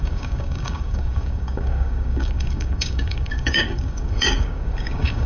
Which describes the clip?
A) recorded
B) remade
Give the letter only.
B